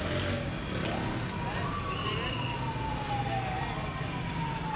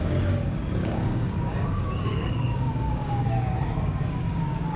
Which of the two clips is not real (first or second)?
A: second